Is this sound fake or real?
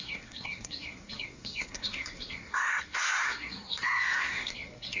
fake